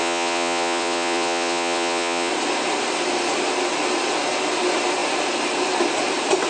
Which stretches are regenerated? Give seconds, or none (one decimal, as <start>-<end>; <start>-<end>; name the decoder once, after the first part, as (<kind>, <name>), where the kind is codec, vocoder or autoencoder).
0.0-2.3 (vocoder, WaveNeXt)